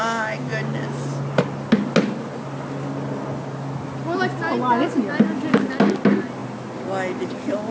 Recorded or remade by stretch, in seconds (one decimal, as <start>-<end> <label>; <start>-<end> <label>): 0.0-7.7 recorded